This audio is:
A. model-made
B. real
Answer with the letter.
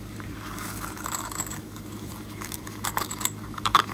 A